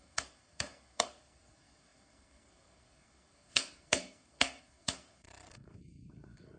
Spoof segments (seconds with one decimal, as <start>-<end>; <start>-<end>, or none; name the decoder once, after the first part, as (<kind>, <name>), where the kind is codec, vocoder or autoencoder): 0.0-6.6 (codec, SNAC)